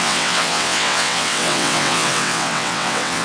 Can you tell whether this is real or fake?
fake